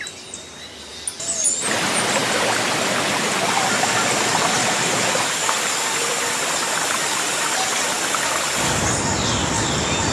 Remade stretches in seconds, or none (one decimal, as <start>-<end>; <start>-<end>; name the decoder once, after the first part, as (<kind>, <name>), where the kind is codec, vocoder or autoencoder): none